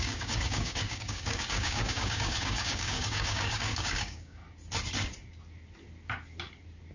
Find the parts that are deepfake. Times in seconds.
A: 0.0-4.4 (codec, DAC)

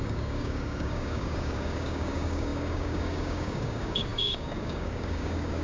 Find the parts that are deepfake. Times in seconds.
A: 0.0-5.6 (codec, DAC)

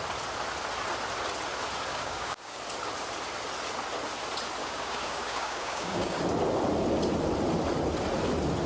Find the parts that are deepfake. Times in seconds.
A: 1.9-2.6 (codec, DAC); 4.6-6.2

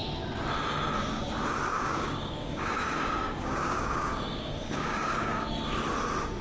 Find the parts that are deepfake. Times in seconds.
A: 1.7-5.5 (codec, DAC)

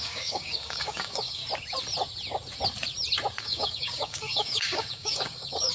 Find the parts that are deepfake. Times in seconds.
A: 0.0-1.4 (codec, DAC); 3.4-5.7

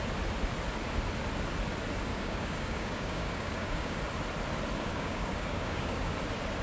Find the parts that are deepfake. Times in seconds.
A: 2.1-4.0 (codec, DAC); 4.9-6.1

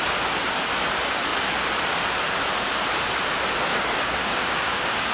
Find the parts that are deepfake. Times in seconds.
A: 3.7-5.1 (codec, DAC)